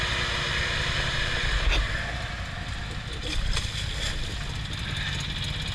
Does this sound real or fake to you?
real